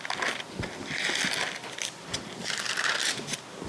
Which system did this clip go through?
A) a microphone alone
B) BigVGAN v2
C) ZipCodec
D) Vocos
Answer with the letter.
A